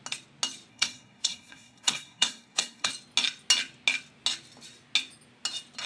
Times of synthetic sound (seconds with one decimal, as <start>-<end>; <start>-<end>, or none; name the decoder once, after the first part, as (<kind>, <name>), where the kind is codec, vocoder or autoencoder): 0.7-2.9 (codec, SNAC)